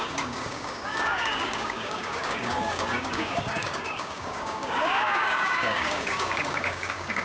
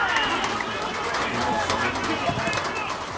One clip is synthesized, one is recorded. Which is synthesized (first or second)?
first